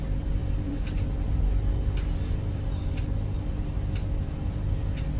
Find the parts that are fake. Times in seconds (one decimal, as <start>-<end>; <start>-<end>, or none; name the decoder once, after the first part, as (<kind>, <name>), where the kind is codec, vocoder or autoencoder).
none